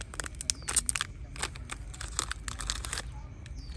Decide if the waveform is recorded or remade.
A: recorded